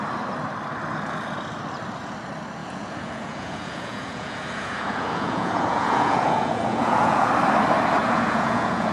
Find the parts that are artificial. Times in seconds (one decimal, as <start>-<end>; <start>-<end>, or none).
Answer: 2.6-7.3; 8.0-8.9